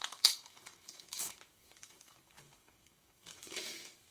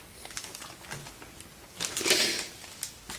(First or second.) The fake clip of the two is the first